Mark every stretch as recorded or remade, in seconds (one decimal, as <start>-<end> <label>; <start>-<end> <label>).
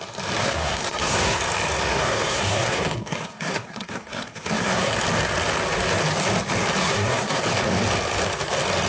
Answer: 0.0-0.4 recorded; 0.4-1.4 remade; 1.4-1.9 recorded; 1.9-4.9 remade; 4.9-6.8 recorded; 6.8-7.4 remade; 7.4-8.9 recorded